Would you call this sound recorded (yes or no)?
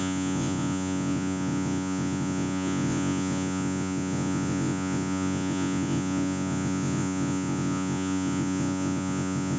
no